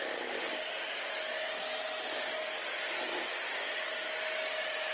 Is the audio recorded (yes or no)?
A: yes